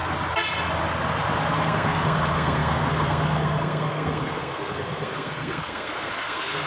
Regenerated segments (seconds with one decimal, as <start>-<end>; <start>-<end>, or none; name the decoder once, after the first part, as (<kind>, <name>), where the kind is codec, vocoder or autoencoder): 1.5-6.7 (codec, SNAC)